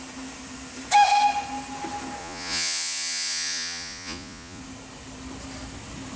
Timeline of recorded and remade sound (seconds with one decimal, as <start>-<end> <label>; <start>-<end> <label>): 0.0-2.2 recorded; 2.2-4.6 remade; 4.6-6.2 recorded